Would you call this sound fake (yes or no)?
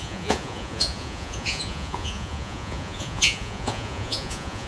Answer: yes